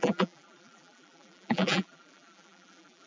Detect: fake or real fake